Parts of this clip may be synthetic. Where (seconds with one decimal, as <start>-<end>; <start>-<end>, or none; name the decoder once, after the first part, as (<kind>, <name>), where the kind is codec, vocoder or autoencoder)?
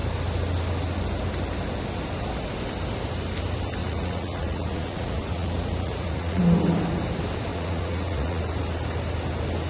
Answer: 3.8-6.4 (vocoder, Vocos); 7.5-8.4